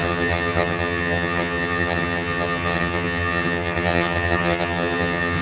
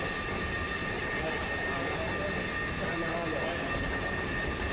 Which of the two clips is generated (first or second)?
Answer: first